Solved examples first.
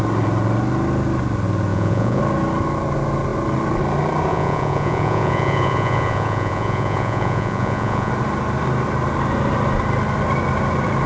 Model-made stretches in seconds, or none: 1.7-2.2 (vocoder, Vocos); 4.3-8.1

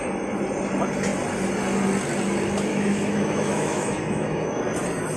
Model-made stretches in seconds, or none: 2.7-4.6 (autoencoder, DAC-VAE)

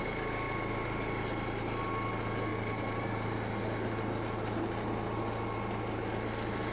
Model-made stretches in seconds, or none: 2.5-3.1 (vocoder, BigVGAN v2)